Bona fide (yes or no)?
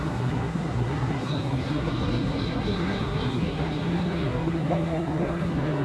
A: no